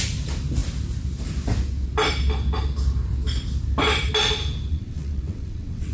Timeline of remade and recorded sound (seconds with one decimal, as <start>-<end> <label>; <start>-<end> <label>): 0.0-4.7 recorded; 4.7-5.9 remade